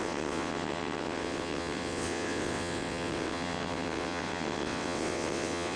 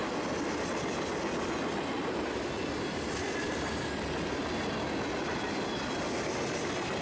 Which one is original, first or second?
second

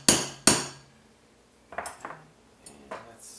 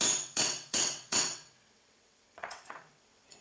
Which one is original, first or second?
first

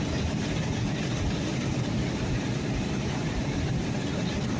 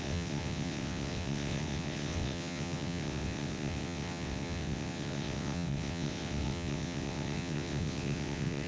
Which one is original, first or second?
first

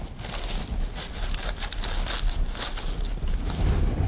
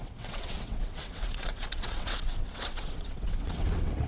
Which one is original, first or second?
first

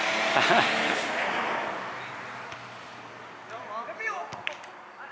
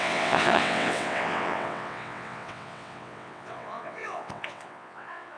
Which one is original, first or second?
first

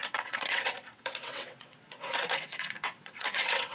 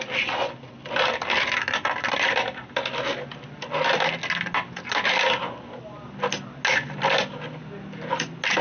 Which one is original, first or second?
second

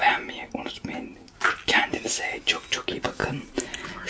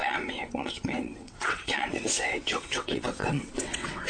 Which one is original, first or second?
first